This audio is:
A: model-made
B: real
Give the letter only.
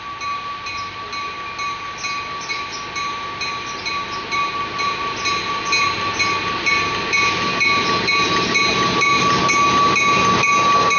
B